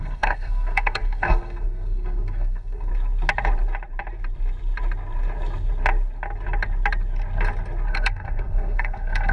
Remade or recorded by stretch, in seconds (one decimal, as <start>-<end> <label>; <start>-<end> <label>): 0.0-2.9 remade; 2.9-7.9 recorded; 7.9-9.3 remade